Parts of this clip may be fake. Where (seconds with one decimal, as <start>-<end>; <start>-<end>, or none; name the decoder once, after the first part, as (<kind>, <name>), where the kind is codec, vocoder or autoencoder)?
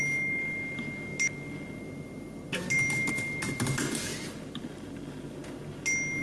none